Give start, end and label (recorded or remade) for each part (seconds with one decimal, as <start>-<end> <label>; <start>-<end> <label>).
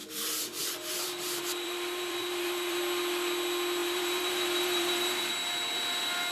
0.0-2.8 remade; 2.8-3.8 recorded; 3.8-5.3 remade; 5.3-6.3 recorded